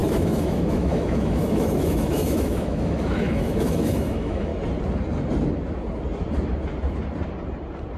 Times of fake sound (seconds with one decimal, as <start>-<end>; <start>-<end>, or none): 0.0-4.5